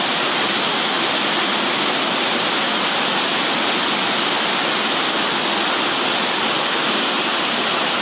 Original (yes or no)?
yes